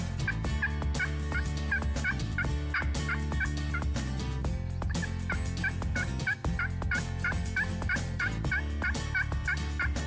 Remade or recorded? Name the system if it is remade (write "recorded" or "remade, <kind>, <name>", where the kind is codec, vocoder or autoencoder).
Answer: recorded